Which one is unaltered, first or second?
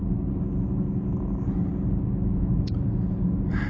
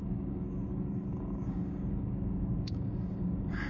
first